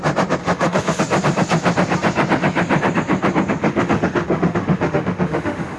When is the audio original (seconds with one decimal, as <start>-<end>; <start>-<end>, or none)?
0.0-0.4; 1.0-3.6